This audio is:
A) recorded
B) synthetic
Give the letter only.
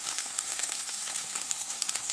B